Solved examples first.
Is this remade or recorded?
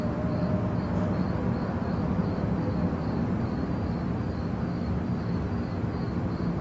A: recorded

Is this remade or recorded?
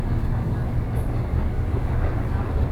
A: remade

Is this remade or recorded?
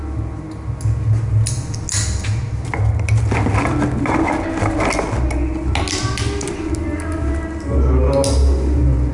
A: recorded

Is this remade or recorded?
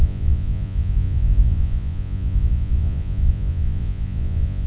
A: remade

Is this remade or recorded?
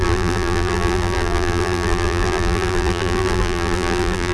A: remade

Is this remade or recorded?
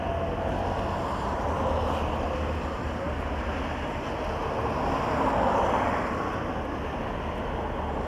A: recorded